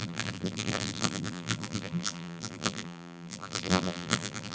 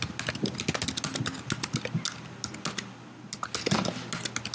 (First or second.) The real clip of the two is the second